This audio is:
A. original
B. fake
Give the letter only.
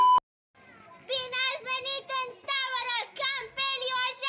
A